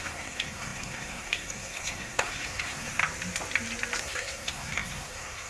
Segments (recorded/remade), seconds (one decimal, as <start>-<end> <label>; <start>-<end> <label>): 0.0-3.0 remade; 3.0-4.0 recorded; 4.0-5.5 remade